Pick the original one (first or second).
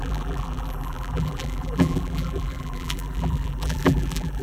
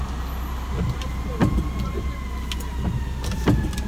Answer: second